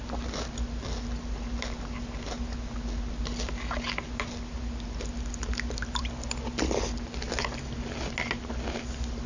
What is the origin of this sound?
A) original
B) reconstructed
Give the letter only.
A